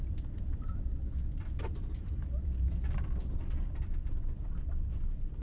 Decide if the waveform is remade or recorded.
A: recorded